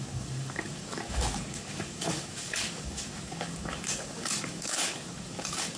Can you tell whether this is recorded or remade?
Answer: remade